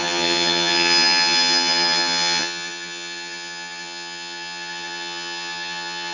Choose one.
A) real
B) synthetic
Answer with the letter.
B